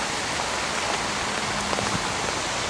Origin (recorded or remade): recorded